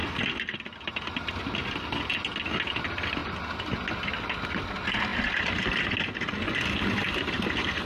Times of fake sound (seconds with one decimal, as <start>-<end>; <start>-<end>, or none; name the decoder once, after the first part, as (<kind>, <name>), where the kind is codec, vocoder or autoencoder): none